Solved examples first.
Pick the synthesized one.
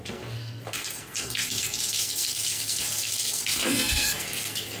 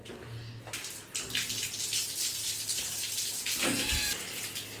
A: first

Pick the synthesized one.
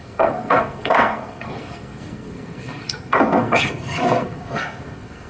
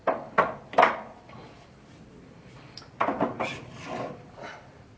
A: first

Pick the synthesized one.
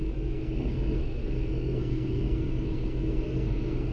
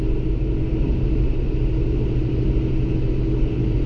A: first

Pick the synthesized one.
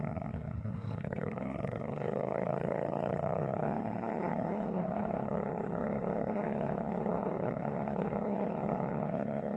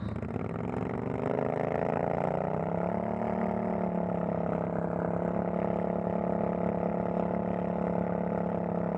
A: first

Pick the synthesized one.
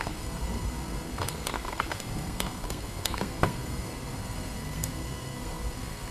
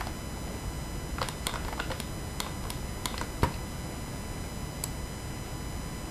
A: first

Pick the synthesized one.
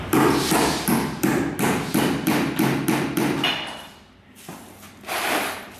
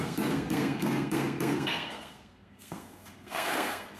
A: second